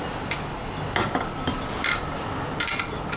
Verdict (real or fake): real